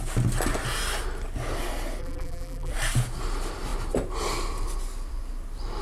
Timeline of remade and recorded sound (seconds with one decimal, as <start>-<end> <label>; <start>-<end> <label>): 0.0-2.0 recorded; 2.0-2.7 remade; 2.7-5.8 recorded